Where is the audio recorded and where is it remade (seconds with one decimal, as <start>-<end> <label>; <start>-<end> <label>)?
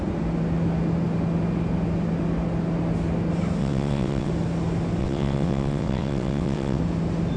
0.0-3.6 recorded; 3.6-4.3 remade; 4.3-5.0 recorded; 5.0-6.8 remade; 6.8-7.4 recorded